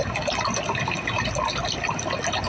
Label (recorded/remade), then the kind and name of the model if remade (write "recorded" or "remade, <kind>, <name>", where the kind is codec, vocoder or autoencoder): recorded